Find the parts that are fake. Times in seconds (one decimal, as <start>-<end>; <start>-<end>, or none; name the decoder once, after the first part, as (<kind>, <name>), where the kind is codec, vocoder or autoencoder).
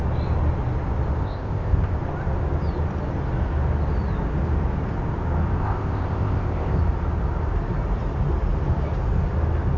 1.2-2.0 (codec, ZipCodec); 5.6-6.8